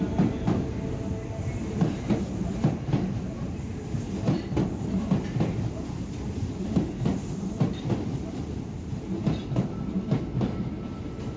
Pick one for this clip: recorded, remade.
recorded